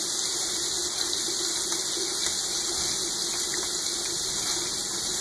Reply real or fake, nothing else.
real